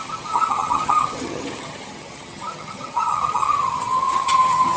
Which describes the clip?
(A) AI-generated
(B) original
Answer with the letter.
A